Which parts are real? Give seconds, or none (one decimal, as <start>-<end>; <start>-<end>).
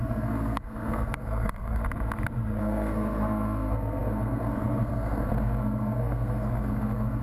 1.8-2.6